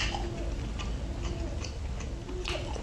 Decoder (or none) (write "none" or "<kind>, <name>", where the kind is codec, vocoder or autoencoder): none